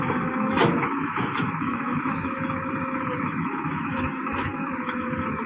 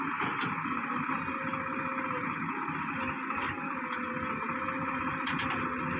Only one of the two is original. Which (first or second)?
second